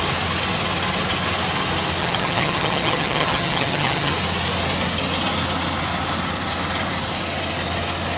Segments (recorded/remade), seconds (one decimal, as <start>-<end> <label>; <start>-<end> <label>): 0.0-2.0 recorded; 2.0-4.1 remade; 4.1-8.2 recorded